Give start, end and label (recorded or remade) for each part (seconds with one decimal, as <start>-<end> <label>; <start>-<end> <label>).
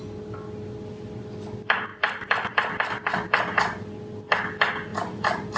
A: 0.0-1.9 recorded; 1.9-2.7 remade; 2.7-4.9 recorded; 4.9-5.6 remade